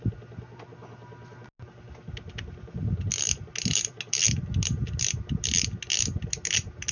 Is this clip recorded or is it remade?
recorded